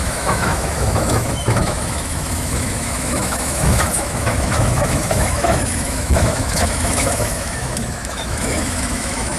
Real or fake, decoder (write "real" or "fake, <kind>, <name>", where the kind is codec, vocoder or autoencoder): fake, autoencoder, DAC-VAE